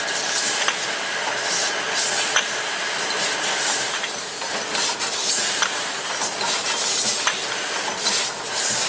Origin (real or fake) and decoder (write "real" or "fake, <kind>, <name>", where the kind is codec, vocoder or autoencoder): real